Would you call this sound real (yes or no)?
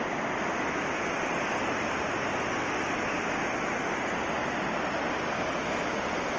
yes